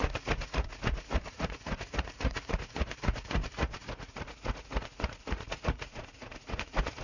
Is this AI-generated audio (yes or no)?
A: yes